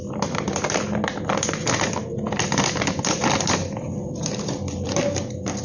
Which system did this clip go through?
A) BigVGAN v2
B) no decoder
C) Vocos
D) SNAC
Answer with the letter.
B